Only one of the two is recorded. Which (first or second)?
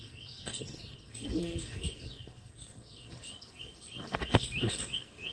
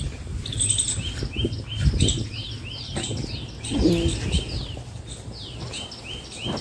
second